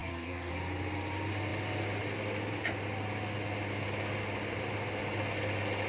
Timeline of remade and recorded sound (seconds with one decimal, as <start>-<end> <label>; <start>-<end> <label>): 0.0-0.5 remade; 0.5-5.9 recorded